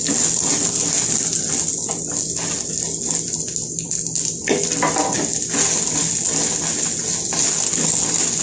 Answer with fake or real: real